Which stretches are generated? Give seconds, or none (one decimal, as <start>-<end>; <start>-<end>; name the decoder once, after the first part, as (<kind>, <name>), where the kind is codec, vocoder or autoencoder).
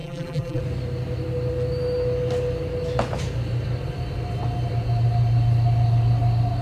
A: 0.0-0.6 (vocoder, BigVGAN v2)